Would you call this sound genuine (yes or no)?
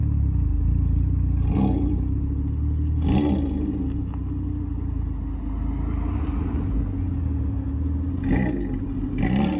yes